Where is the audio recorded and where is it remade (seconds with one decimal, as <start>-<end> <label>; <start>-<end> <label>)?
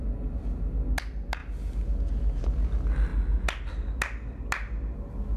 0.0-5.4 recorded